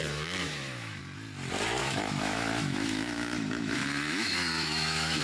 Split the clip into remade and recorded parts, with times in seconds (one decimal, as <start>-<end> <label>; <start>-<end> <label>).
0.0-1.0 remade; 1.0-1.8 recorded; 1.8-5.2 remade

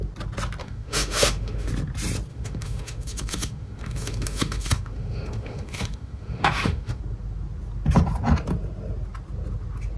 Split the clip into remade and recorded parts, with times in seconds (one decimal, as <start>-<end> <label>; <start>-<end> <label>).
0.0-0.6 recorded; 0.6-1.7 remade; 1.7-2.3 recorded; 2.3-7.0 remade; 7.0-10.0 recorded

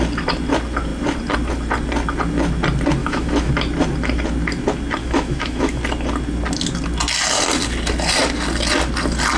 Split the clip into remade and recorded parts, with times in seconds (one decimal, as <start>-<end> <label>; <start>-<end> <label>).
0.0-3.0 recorded; 3.0-3.5 remade; 3.5-5.0 recorded; 5.0-5.8 remade; 5.8-9.4 recorded

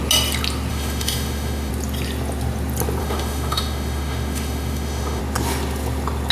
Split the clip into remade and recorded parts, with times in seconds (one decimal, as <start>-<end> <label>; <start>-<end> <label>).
0.0-0.7 recorded; 0.7-1.7 remade; 1.7-3.0 recorded; 3.0-5.2 remade; 5.2-6.3 recorded